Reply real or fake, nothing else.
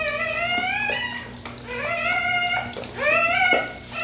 real